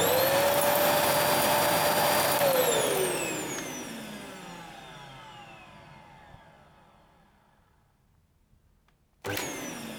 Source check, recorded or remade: recorded